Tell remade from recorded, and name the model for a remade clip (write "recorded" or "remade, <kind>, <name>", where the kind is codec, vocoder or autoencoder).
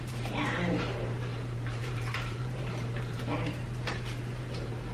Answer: remade, vocoder, BigVGAN v2